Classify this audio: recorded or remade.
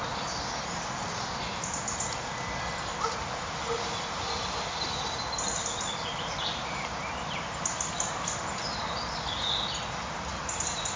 recorded